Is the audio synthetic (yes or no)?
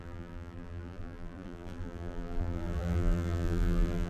yes